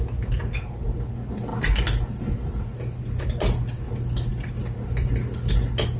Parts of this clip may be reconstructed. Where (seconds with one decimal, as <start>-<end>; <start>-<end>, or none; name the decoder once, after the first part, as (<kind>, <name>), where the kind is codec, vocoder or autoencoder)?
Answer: none